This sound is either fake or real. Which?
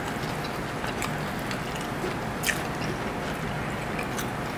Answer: real